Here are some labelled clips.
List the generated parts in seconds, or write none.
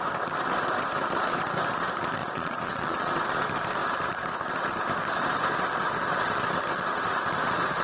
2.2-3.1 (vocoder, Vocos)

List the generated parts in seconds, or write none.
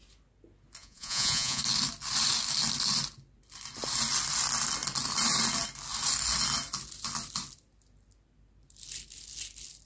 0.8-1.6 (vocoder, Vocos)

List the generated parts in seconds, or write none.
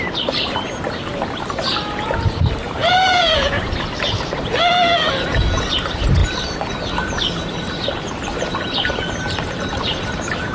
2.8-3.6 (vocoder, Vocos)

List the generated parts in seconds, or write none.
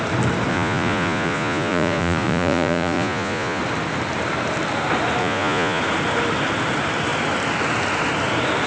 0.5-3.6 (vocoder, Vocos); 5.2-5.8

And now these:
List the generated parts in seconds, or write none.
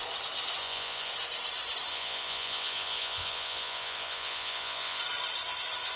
0.6-1.1 (vocoder, Vocos); 1.9-5.0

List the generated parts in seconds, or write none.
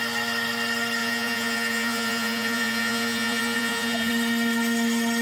1.0-4.1 (vocoder, Vocos)